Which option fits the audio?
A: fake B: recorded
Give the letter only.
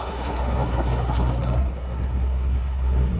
A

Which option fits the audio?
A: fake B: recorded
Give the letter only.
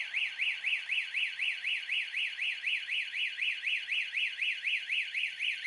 B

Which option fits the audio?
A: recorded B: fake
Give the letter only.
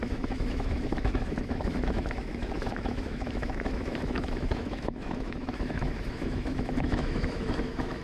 B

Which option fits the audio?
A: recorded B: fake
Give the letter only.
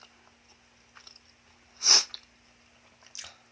A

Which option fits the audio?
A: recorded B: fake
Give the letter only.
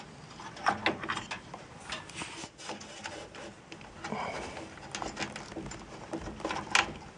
A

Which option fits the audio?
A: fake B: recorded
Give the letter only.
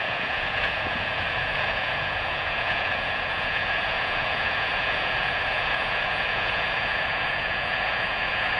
A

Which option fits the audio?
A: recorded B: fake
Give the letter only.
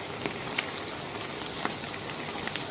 A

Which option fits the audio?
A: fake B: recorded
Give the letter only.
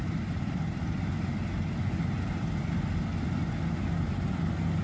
B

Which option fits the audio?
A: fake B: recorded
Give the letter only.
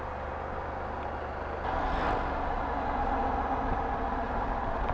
B